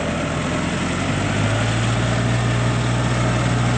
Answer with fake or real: real